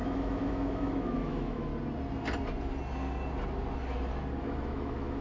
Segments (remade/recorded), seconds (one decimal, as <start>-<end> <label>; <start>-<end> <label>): 0.0-1.7 remade; 1.7-4.4 recorded; 4.4-5.2 remade